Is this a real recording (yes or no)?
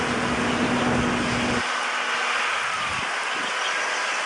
yes